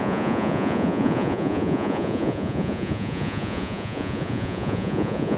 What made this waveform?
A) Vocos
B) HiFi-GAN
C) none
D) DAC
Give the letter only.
A